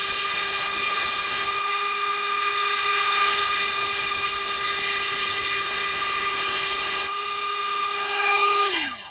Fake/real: fake